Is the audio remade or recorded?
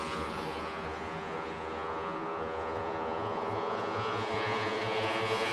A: remade